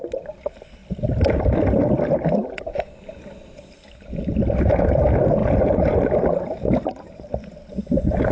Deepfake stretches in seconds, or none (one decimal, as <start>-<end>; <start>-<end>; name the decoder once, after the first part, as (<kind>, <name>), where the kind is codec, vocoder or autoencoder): 0.8-2.8 (vocoder, BigVGAN v2); 5.4-7.7